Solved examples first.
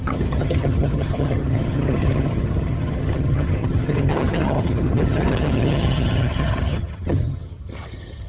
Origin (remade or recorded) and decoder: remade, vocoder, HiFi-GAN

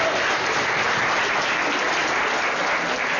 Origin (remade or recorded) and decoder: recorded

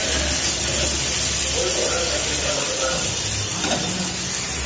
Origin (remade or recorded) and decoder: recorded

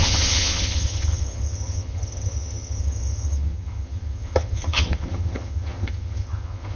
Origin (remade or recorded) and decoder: remade, vocoder, HiFi-GAN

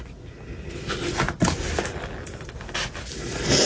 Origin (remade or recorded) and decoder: recorded